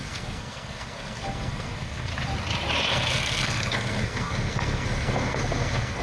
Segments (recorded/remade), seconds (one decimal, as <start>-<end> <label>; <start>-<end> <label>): 0.0-2.1 remade; 2.1-2.9 recorded; 2.9-6.0 remade